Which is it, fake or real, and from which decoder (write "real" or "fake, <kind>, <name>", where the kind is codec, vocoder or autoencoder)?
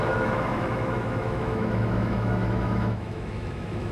fake, autoencoder, DAC-VAE